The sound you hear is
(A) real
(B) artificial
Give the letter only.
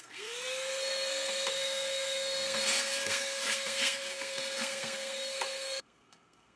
B